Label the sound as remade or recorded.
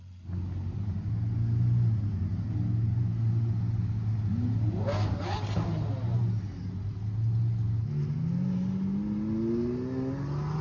recorded